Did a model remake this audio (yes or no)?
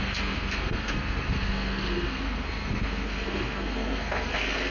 yes